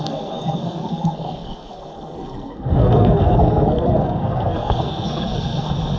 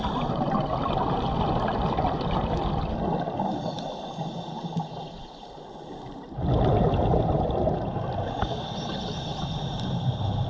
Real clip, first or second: second